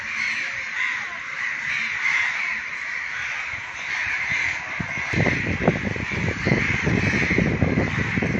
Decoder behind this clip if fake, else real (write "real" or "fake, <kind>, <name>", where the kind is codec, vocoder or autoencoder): fake, vocoder, BigVGAN v2